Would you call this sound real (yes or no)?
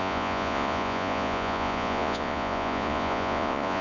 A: no